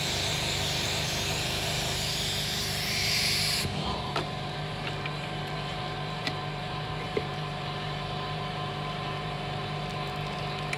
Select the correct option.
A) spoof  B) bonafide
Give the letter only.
A